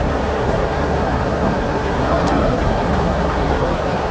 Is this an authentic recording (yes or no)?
no